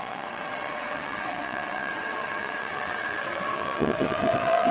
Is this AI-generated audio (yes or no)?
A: yes